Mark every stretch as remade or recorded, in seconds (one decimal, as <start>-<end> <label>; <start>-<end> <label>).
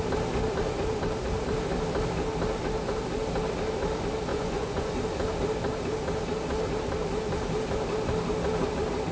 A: 0.0-4.3 recorded; 4.3-4.9 remade; 4.9-9.1 recorded